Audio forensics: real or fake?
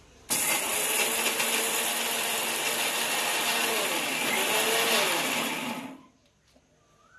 real